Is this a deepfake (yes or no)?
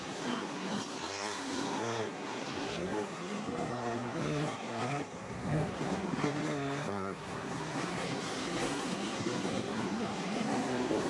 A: yes